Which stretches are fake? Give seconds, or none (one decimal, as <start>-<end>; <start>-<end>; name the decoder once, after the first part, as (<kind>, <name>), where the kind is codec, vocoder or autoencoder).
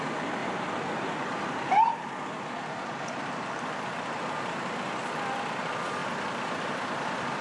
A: 0.4-2.1 (vocoder, BigVGAN v2); 6.0-7.4